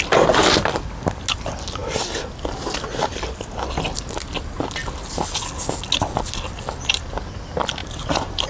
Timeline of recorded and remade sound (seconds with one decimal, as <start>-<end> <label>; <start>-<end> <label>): 0.0-7.8 recorded; 7.8-8.5 remade